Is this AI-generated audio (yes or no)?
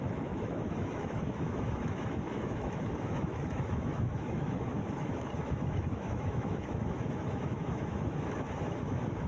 yes